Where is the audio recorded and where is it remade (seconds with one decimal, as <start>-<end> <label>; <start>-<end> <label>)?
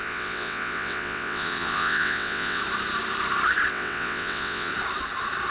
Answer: 0.0-2.6 remade; 2.6-3.7 recorded; 3.7-4.7 remade; 4.7-5.5 recorded